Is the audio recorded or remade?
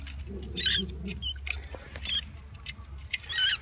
recorded